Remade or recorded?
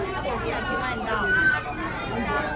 recorded